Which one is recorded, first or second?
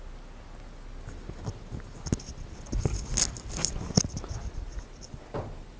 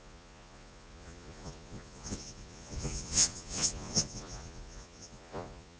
first